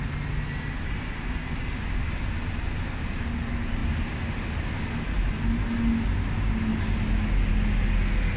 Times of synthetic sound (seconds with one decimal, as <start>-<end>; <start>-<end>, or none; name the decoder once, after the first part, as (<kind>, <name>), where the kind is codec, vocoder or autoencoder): none